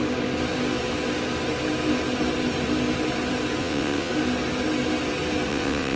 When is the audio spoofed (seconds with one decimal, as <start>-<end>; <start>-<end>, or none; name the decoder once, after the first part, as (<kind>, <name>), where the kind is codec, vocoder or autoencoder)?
3.6-4.1 (vocoder, WaveNeXt); 5.5-6.0